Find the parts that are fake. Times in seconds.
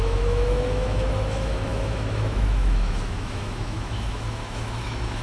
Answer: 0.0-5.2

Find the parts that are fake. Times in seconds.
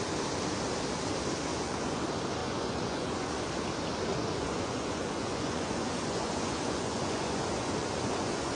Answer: 1.5-2.0; 2.4-3.5; 4.1-8.6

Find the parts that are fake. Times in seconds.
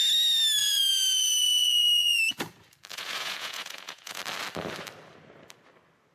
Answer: 0.6-2.4; 2.9-4.2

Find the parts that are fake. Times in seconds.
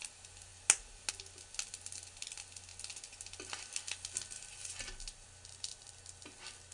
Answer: none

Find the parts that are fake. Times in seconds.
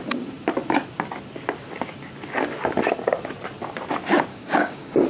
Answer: 4.3-5.1